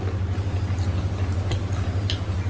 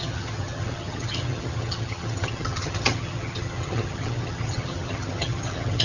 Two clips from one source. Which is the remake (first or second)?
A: second